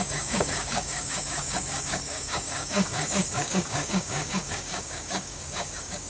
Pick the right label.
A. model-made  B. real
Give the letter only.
A